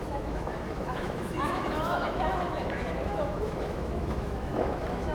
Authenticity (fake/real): fake